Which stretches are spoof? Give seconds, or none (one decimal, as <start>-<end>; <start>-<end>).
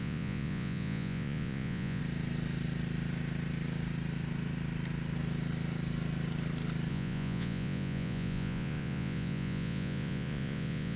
0.0-2.0; 6.9-11.0